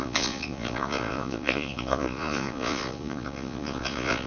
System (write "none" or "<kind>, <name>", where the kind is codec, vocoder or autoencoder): vocoder, Vocos